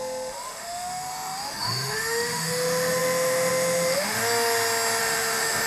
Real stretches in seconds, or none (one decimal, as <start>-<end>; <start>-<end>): 4.2-5.0